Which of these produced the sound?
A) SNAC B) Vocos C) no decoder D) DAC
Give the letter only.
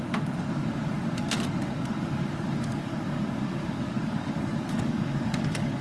D